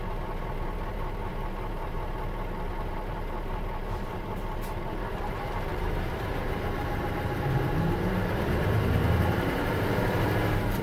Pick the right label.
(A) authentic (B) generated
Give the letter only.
B